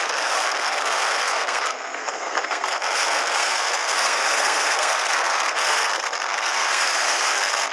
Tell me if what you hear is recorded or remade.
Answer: remade